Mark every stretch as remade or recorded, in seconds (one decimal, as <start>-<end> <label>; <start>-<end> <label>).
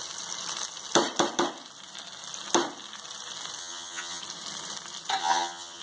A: 0.0-3.6 recorded; 3.6-4.2 remade; 4.2-5.2 recorded; 5.2-5.8 remade